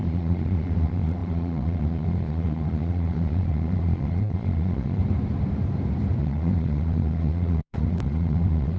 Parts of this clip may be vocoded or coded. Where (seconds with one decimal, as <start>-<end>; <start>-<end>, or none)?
0.0-5.0; 6.2-8.8